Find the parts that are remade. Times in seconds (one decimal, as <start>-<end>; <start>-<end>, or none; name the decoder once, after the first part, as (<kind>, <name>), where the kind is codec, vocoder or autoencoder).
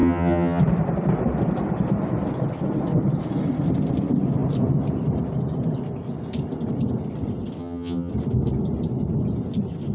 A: 0.0-0.6 (vocoder, HiFi-GAN); 7.6-8.1